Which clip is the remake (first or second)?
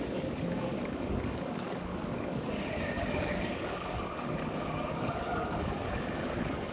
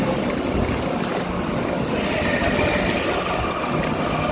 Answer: first